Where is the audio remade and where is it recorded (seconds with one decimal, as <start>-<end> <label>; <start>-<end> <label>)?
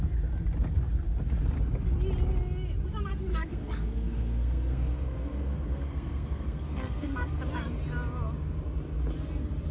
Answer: 0.0-3.3 recorded; 3.3-7.4 remade; 7.4-9.7 recorded